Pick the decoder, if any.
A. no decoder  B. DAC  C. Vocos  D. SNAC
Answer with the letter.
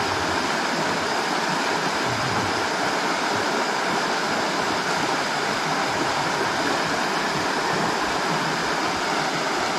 A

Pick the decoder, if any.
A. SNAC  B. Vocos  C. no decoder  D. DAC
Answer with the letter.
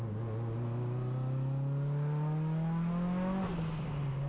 C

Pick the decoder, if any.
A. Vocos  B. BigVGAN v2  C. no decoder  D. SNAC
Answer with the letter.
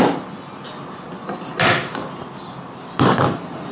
C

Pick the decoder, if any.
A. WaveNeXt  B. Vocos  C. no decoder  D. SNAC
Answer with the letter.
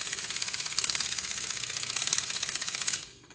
D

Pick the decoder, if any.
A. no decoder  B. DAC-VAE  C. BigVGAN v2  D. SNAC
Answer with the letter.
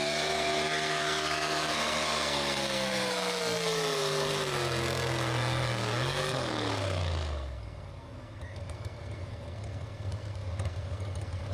D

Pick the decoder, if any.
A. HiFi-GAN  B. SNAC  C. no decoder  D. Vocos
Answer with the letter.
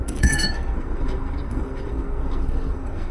B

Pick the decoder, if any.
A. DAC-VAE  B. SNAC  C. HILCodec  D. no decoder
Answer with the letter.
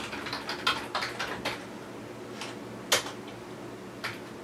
D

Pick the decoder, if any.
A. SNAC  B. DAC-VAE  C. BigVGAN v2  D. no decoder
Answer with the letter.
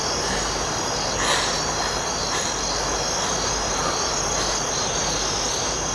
D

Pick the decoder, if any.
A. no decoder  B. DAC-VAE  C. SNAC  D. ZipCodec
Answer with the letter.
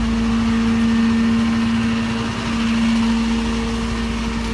A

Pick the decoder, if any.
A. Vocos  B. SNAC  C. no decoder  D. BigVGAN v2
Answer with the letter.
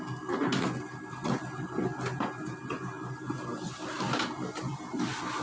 C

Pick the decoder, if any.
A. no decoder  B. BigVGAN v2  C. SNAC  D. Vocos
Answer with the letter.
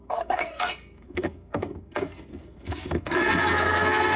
C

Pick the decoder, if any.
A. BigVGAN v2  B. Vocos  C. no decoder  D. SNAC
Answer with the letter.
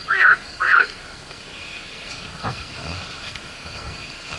D